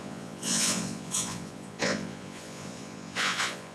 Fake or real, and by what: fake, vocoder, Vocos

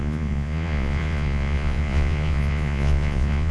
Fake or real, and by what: fake, vocoder, Vocos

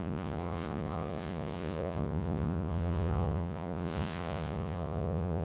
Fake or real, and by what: fake, vocoder, Vocos